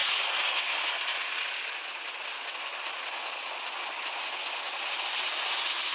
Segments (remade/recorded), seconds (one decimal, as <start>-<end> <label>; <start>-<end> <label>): 0.0-5.9 recorded